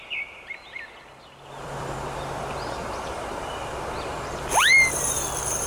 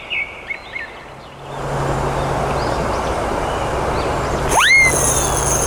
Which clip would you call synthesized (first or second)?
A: first